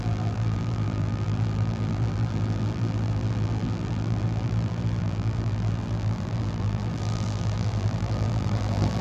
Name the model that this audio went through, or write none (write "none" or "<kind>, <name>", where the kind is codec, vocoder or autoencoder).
vocoder, BigVGAN v2